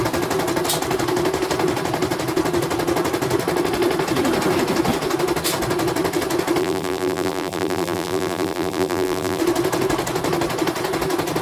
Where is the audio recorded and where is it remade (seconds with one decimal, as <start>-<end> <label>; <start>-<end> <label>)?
0.0-6.6 recorded; 6.6-9.4 remade; 9.4-11.4 recorded